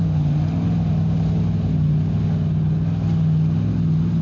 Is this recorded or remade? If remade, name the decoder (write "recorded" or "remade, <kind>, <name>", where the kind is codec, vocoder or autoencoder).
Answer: recorded